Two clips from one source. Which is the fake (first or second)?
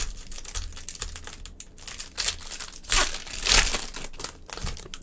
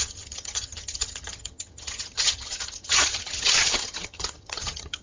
second